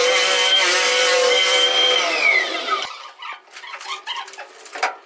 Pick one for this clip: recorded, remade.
remade